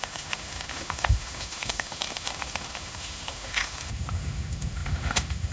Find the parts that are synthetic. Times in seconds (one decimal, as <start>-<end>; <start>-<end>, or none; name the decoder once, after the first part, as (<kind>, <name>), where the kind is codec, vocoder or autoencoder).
0.0-5.5 (autoencoder, DAC-VAE)